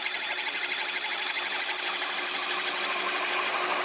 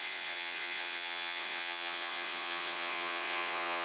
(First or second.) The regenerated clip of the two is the second